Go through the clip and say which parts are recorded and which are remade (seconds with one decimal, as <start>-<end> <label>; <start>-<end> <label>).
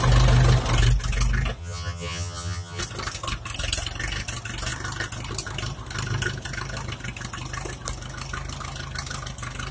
0.0-1.6 recorded; 1.6-2.8 remade; 2.8-9.7 recorded